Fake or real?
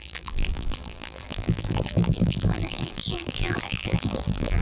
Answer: fake